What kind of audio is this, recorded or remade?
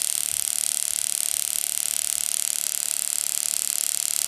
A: recorded